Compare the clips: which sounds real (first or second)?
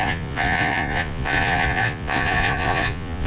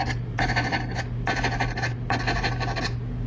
second